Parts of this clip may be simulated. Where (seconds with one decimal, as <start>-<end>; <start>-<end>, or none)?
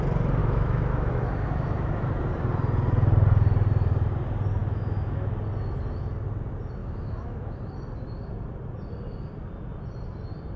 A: 0.4-2.1; 4.6-5.3; 6.8-7.6